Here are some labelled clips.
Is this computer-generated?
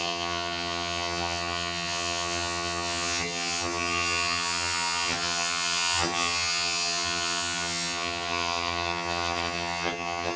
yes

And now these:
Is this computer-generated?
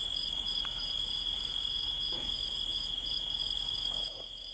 yes